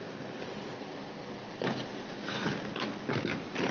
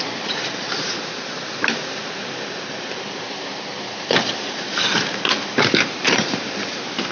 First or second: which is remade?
second